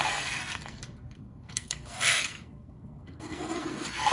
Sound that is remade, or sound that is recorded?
remade